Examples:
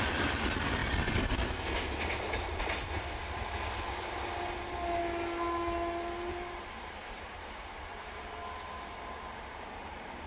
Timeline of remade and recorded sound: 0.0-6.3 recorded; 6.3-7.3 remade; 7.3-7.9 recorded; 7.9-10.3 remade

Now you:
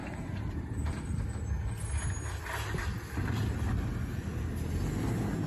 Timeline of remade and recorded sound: 0.0-1.4 remade; 1.4-5.5 recorded

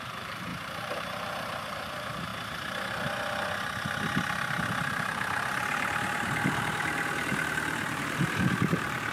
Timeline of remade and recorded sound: 0.0-2.3 remade; 2.3-4.9 recorded; 4.9-9.1 remade

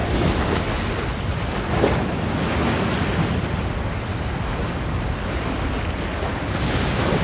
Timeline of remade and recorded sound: 0.0-7.2 recorded

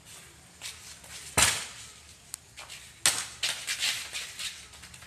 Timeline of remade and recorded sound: 0.0-5.1 recorded

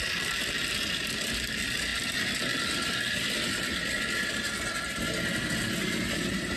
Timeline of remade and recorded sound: 0.0-6.6 recorded

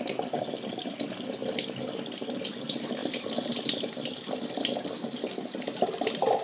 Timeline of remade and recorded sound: 0.0-3.0 recorded; 3.0-3.9 remade; 3.9-6.4 recorded